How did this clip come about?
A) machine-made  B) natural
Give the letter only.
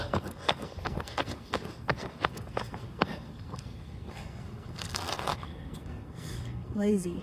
A